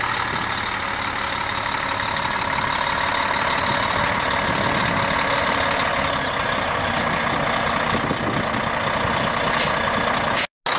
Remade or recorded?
recorded